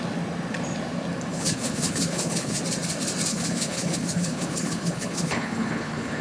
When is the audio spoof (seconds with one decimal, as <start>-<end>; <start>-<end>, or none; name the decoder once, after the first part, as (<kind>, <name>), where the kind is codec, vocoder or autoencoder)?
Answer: 1.3-2.6 (codec, HILCodec); 3.3-6.2